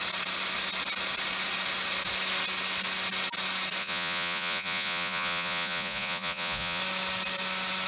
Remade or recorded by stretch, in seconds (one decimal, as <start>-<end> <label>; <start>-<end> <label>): 0.0-3.8 recorded; 3.8-6.8 remade; 6.8-7.9 recorded